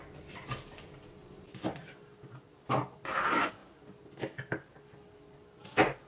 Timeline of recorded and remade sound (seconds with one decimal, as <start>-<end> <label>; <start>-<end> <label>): 0.0-6.1 recorded

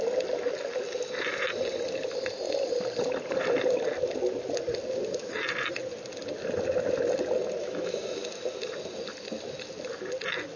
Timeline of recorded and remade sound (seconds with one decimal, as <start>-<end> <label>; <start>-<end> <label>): 0.0-7.6 recorded; 7.6-8.2 remade; 8.2-10.6 recorded